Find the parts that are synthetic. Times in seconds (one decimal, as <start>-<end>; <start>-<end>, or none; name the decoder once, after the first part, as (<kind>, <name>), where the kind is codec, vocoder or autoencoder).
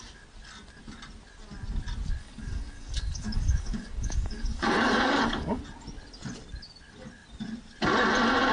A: 2.2-5.6 (codec, DAC)